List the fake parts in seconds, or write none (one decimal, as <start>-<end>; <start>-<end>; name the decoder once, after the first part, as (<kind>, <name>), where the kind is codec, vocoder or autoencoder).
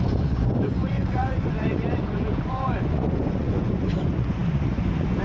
0.0-5.2 (vocoder, Vocos)